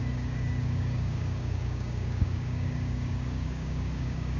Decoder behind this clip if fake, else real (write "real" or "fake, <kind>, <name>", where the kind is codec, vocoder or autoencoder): fake, codec, DAC